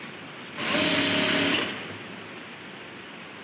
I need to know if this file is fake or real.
real